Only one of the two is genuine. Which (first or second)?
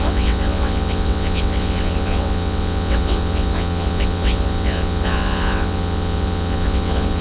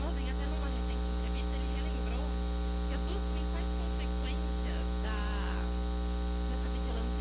second